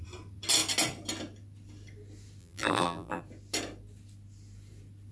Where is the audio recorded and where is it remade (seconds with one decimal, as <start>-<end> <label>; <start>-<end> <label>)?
0.0-2.4 recorded; 2.4-3.2 remade; 3.2-5.1 recorded

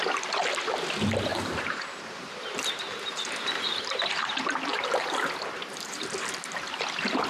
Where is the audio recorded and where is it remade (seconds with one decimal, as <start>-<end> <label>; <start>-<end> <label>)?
0.0-1.3 recorded; 1.3-4.2 remade; 4.2-4.7 recorded; 4.7-6.6 remade; 6.6-7.3 recorded